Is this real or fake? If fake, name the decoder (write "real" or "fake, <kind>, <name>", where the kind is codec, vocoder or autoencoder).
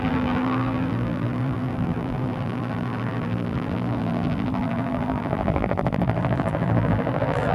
fake, vocoder, BigVGAN v2